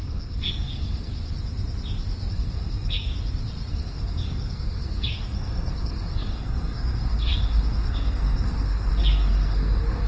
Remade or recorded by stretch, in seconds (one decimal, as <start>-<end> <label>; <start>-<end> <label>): 0.0-1.1 remade; 1.1-2.3 recorded; 2.3-3.1 remade; 3.1-3.7 recorded; 3.7-10.1 remade